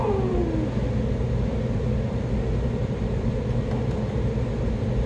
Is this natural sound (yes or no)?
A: yes